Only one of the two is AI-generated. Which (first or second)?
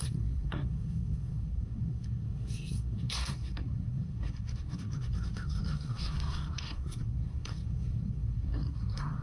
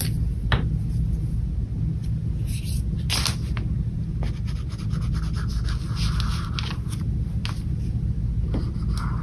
first